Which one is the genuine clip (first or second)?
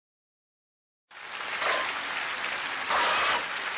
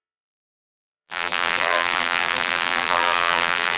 first